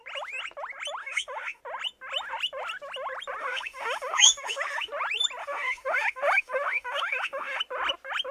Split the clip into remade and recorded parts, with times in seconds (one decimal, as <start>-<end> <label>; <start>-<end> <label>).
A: 0.0-1.0 recorded; 1.0-1.6 remade; 1.6-3.4 recorded; 3.4-4.9 remade; 4.9-5.4 recorded; 5.4-7.6 remade; 7.6-8.3 recorded